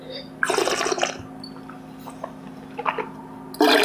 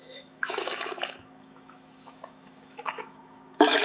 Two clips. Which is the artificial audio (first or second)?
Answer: second